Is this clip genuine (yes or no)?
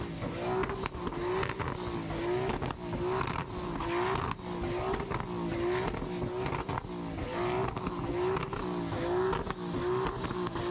yes